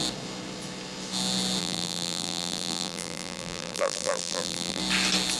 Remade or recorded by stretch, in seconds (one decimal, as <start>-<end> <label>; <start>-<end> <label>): 0.0-1.6 recorded; 1.6-4.8 remade; 4.8-5.4 recorded